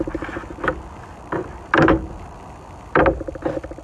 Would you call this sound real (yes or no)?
yes